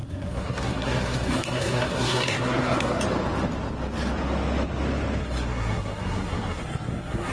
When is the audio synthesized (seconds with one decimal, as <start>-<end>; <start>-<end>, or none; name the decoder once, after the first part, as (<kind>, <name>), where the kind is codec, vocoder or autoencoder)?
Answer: 0.0-3.0 (codec, SNAC); 5.2-7.3